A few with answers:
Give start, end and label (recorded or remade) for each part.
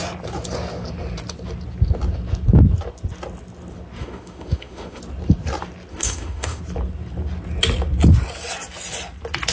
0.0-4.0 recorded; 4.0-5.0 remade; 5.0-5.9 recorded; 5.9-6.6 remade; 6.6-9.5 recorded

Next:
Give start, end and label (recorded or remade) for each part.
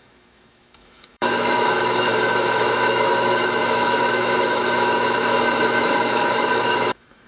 0.0-7.3 remade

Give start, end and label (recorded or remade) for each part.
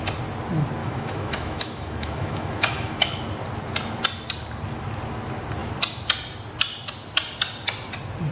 0.0-0.8 recorded; 0.8-3.2 remade; 3.2-8.3 recorded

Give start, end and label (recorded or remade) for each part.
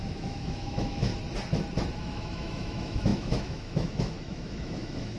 0.0-1.1 remade; 1.1-2.0 recorded; 2.0-5.2 remade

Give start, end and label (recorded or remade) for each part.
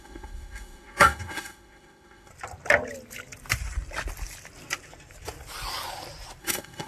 0.0-2.3 remade; 2.3-6.4 recorded; 6.4-6.9 remade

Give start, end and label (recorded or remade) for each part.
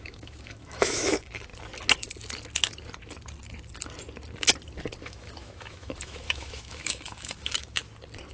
0.0-1.5 remade; 1.5-5.0 recorded; 5.0-7.8 remade; 7.8-8.3 recorded